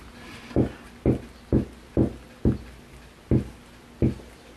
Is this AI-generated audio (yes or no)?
no